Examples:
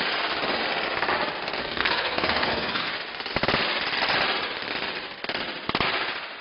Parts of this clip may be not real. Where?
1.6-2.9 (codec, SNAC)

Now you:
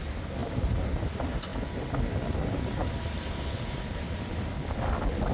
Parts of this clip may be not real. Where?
none

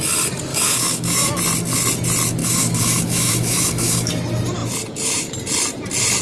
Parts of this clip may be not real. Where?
0.5-1.4 (autoencoder, DAC-VAE); 2.4-4.1

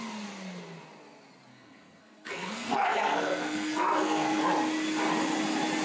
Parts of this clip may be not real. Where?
1.5-4.4 (codec, SNAC)

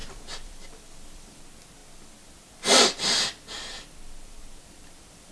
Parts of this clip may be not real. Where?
0.0-1.4 (vocoder, BigVGAN v2)

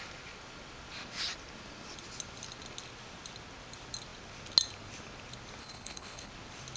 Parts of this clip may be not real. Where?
5.6-6.3 (codec, HILCodec)

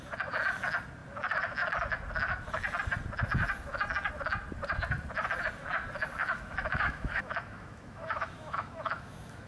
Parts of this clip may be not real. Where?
6.2-9.5 (autoencoder, DAC-VAE)

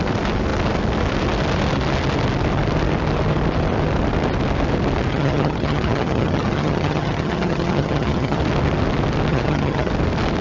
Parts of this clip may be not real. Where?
5.1-8.4 (vocoder, HiFi-GAN); 9.3-9.9